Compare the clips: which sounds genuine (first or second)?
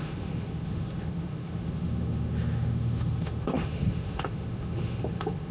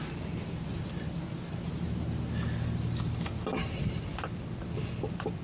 second